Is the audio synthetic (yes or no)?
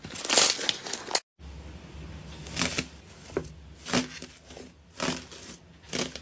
no